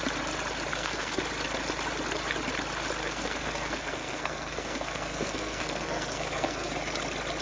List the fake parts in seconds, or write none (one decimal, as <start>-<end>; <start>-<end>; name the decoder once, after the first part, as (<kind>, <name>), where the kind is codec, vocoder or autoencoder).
0.7-1.2 (codec, SNAC); 3.0-6.7